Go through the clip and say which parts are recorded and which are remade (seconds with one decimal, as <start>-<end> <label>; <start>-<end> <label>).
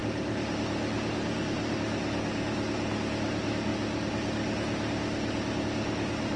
0.0-6.4 recorded